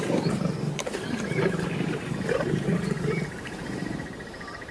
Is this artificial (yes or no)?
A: yes